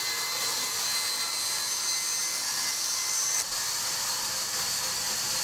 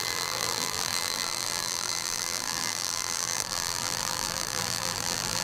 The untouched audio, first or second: first